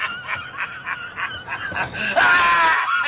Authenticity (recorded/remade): recorded